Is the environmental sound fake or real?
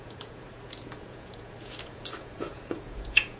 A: fake